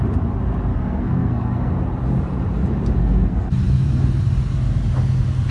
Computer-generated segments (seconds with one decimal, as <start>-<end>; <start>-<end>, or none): 0.7-1.7; 3.0-3.5